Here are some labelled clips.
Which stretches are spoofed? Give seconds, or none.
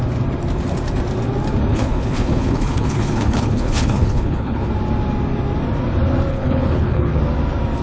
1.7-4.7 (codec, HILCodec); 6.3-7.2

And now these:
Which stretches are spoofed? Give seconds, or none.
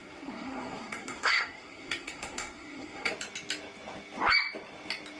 0.0-3.1 (codec, SNAC)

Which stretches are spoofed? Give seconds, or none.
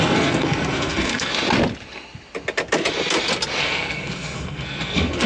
0.0-1.3 (codec, SNAC); 3.6-5.3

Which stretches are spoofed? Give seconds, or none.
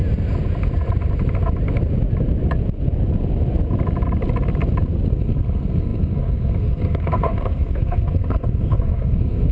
5.1-9.5 (codec, SNAC)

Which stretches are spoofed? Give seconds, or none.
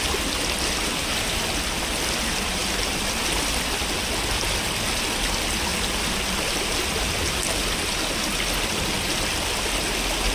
none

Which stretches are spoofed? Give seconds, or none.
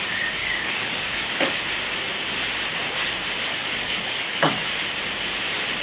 0.4-1.5 (codec, DAC); 3.5-4.7